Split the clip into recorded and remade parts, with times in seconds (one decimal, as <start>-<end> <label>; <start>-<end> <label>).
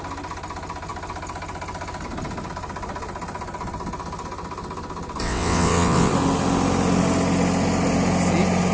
0.0-5.2 recorded; 5.2-6.1 remade; 6.1-8.7 recorded